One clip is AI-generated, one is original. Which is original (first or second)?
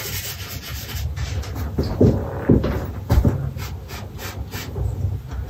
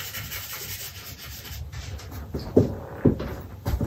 first